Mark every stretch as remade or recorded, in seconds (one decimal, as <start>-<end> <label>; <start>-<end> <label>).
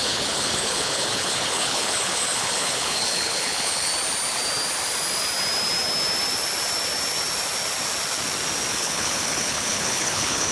0.0-3.9 remade; 3.9-8.7 recorded; 8.7-10.5 remade